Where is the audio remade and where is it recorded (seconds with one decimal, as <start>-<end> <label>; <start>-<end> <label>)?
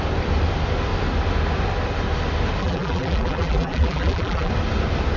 0.0-2.6 recorded; 2.6-4.5 remade; 4.5-5.2 recorded